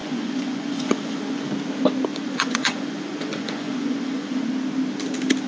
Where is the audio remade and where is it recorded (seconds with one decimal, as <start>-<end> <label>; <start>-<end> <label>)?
0.0-1.5 remade; 1.5-2.1 recorded; 2.1-4.4 remade; 4.4-5.5 recorded